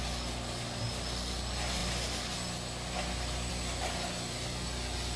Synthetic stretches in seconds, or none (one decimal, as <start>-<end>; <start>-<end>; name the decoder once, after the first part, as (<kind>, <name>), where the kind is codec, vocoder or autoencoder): none